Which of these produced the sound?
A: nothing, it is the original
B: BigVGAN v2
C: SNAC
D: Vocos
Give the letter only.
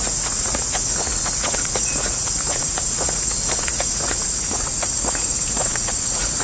D